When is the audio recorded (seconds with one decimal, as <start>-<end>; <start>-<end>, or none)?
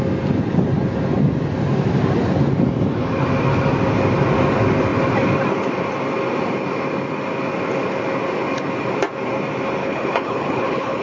0.0-9.8